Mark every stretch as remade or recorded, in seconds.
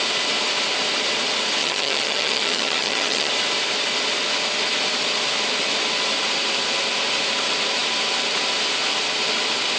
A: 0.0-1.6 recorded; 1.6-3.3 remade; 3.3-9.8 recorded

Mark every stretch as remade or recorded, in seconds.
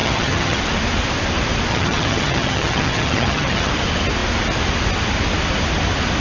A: 0.0-0.6 remade; 0.6-1.7 recorded; 1.7-3.7 remade; 3.7-6.2 recorded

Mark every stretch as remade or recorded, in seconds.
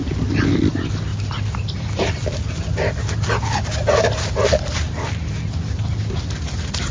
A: 0.0-6.9 recorded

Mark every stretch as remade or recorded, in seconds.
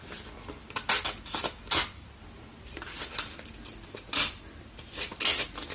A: 0.0-5.7 recorded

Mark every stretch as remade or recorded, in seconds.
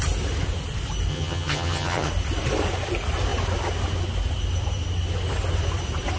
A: 0.0-1.1 recorded; 1.1-2.1 remade; 2.1-6.2 recorded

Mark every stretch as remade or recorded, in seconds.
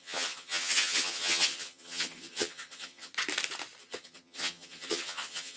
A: 0.0-3.1 remade; 3.1-3.8 recorded; 3.8-5.6 remade